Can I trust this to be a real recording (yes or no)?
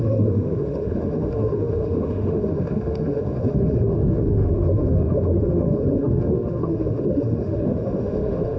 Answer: no